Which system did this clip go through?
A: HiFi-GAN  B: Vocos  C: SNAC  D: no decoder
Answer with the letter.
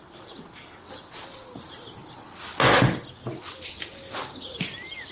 D